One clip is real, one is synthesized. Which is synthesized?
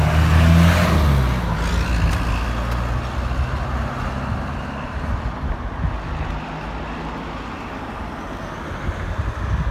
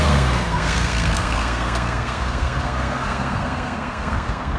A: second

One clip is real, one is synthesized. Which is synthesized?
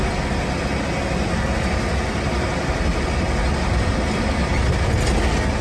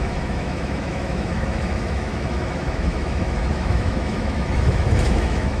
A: second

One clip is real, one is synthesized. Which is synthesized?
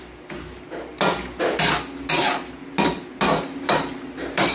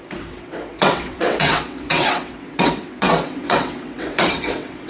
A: second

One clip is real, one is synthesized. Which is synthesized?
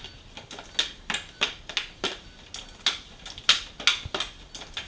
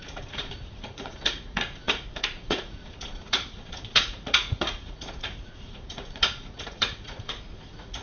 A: second